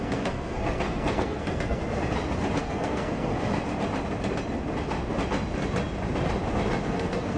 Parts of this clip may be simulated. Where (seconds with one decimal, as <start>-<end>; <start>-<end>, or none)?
0.0-1.8; 2.6-3.3; 6.8-7.4

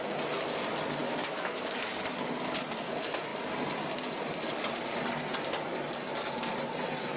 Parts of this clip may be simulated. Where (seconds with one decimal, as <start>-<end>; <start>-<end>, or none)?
1.0-1.8

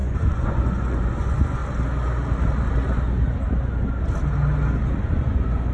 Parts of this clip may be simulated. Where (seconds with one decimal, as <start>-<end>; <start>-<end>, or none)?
0.0-1.6; 5.0-5.7

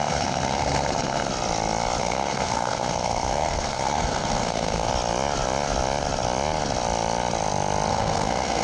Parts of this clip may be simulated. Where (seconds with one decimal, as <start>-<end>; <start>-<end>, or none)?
0.0-1.2; 2.0-4.9; 7.9-8.6

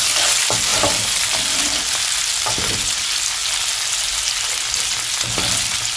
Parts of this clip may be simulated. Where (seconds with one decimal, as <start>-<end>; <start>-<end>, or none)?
none